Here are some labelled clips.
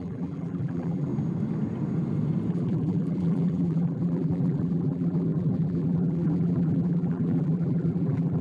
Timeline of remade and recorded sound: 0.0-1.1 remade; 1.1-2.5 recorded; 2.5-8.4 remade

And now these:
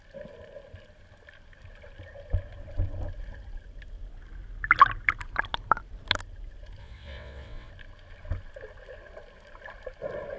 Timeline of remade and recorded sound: 0.0-6.8 recorded; 6.8-7.7 remade; 7.7-10.4 recorded

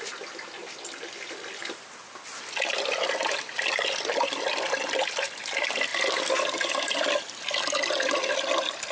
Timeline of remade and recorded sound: 0.0-8.9 recorded

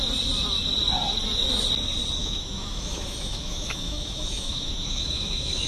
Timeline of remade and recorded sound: 0.0-2.2 recorded; 2.2-5.7 remade